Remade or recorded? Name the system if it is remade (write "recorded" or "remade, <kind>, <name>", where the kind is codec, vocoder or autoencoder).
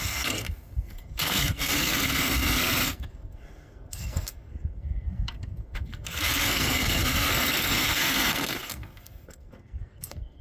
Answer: remade, codec, SNAC